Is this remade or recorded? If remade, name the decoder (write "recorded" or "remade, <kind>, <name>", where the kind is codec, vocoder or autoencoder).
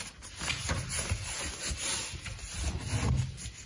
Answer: recorded